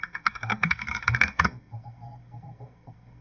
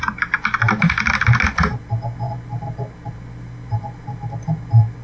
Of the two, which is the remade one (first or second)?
first